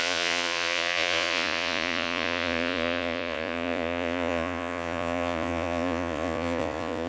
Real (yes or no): no